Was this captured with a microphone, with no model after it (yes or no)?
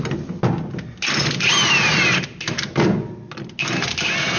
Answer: yes